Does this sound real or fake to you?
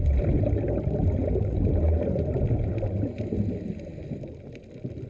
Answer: real